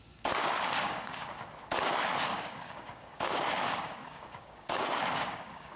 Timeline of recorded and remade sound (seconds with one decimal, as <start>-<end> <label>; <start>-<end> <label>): 0.0-0.4 recorded; 0.4-1.5 remade; 1.5-2.3 recorded; 2.3-5.8 remade